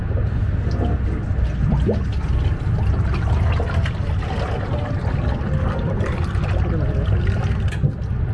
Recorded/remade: recorded